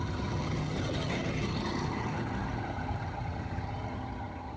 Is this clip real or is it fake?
fake